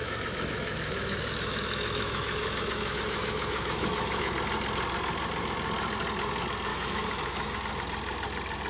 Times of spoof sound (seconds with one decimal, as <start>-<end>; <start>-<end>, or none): 0.0-4.3; 6.7-7.6